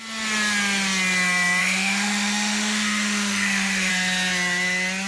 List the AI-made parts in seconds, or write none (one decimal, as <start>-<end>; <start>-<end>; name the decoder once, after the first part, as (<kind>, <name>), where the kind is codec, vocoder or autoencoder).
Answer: 1.6-3.9 (autoencoder, DAC-VAE)